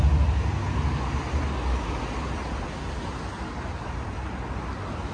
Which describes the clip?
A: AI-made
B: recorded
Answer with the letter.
B